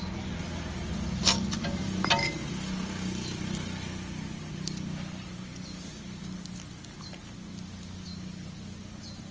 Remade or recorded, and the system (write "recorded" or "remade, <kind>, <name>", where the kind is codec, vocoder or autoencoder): recorded